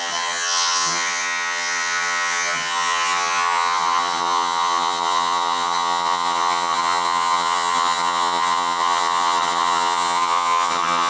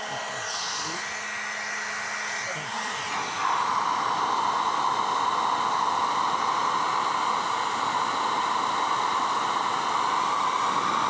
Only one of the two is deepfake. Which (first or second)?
first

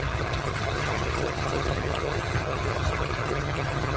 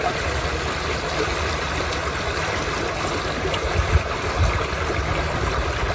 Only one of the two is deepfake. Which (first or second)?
first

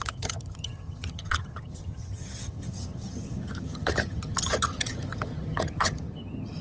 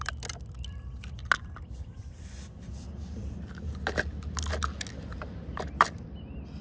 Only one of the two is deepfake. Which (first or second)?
first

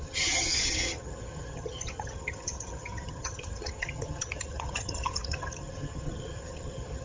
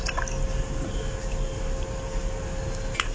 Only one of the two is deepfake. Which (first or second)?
first